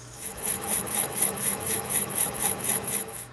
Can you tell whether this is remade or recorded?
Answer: remade